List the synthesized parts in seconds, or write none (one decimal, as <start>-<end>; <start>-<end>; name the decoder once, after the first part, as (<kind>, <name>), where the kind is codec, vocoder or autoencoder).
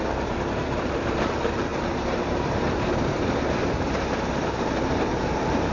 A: 0.0-5.7 (vocoder, BigVGAN v2)